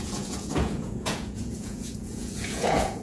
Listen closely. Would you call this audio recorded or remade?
remade